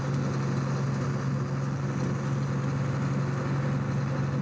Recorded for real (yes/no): yes